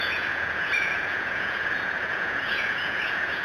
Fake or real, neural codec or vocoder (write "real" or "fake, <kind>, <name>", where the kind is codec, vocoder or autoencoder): fake, vocoder, Vocos